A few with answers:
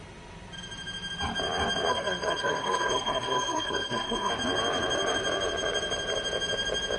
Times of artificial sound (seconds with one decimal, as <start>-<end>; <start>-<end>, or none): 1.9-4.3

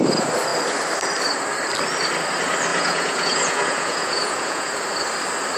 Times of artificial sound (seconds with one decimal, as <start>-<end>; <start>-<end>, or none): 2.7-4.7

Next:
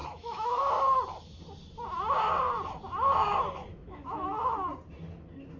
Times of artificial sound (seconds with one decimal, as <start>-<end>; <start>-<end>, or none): 0.0-0.6; 3.7-4.3

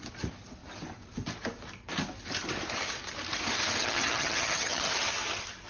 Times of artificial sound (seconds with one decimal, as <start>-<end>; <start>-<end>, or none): 3.8-4.9

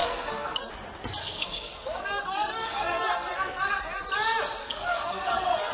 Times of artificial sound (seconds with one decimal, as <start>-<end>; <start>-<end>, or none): 0.0-0.7; 1.2-3.8; 4.6-5.7

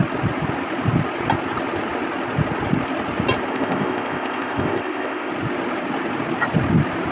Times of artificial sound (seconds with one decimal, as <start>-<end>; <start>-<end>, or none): 3.5-5.3

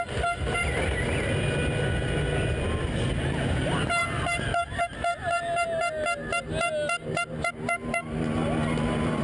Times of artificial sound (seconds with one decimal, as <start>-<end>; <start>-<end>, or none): none

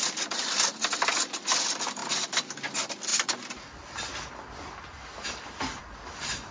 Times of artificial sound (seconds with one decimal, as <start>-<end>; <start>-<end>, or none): none